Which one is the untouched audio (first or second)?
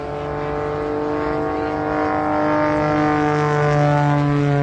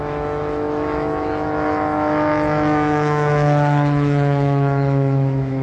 first